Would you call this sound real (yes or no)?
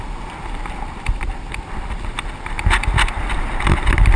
no